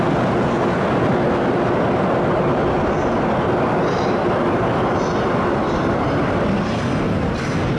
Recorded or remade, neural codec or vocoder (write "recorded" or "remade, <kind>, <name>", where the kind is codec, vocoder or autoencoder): recorded